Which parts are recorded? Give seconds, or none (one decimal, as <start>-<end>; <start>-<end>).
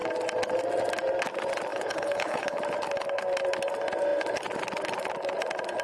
0.0-1.7; 2.6-5.8